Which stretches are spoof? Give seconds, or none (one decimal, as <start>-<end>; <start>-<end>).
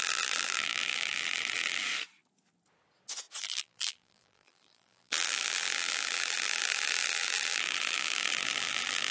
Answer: 0.0-1.8; 3.4-9.1